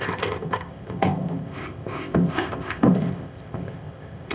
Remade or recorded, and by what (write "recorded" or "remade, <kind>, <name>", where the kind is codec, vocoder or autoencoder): remade, codec, ZipCodec